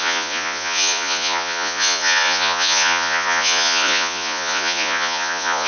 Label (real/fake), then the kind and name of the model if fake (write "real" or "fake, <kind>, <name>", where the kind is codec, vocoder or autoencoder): fake, vocoder, Vocos